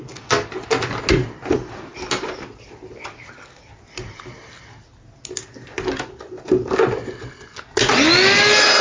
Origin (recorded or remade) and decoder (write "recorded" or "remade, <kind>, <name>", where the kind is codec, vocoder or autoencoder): recorded